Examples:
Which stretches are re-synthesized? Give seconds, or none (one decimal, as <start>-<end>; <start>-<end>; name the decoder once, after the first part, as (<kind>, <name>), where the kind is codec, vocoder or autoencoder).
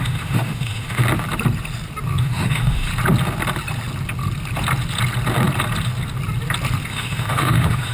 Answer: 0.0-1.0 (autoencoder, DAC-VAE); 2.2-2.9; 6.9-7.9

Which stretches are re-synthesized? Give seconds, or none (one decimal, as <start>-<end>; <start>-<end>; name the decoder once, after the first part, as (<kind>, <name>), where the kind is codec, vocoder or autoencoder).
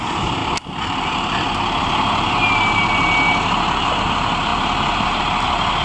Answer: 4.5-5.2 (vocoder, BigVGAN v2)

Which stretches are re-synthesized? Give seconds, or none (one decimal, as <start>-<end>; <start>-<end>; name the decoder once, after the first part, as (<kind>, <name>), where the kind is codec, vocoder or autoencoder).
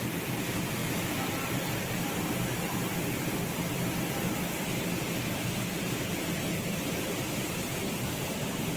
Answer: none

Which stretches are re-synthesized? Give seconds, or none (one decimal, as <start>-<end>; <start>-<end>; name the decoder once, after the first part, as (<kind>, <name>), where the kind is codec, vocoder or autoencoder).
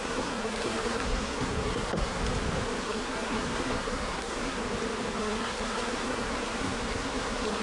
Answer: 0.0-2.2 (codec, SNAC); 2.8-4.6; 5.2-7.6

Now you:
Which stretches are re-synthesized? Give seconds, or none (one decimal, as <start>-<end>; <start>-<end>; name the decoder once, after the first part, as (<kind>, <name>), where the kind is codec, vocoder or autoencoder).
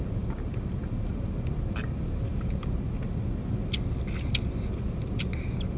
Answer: none